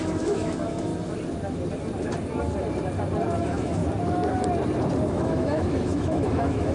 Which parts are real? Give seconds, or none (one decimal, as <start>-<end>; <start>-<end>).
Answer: 0.9-3.4; 3.8-5.1